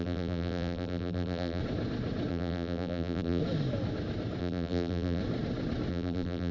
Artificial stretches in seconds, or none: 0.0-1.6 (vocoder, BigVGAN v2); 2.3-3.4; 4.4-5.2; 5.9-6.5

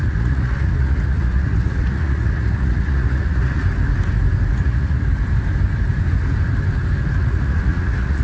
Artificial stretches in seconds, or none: 0.0-3.6 (vocoder, Vocos); 4.6-5.1; 7.2-8.2